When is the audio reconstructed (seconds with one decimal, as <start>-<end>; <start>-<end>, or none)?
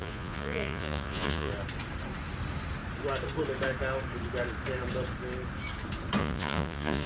0.0-1.5; 6.2-7.1